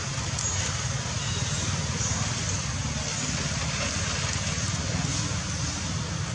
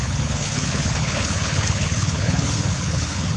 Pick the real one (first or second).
first